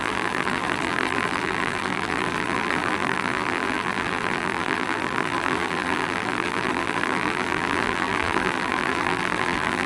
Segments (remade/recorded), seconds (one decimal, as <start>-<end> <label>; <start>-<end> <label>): 0.0-9.9 remade